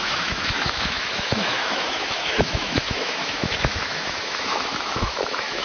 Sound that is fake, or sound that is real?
fake